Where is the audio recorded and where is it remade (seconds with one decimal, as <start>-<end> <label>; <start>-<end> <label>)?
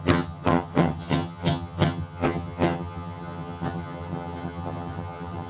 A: 0.0-5.5 remade